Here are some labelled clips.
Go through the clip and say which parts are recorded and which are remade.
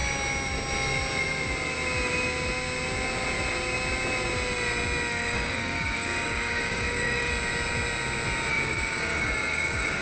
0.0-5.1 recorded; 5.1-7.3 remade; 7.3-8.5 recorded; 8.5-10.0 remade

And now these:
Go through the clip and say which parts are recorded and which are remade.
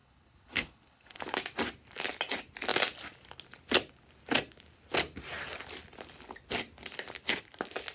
0.0-1.2 remade; 1.2-7.9 recorded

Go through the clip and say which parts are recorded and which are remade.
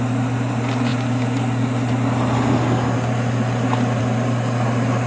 0.0-5.1 recorded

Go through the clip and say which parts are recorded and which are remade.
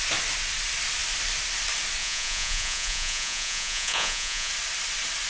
0.0-2.0 recorded; 2.0-4.5 remade; 4.5-5.3 recorded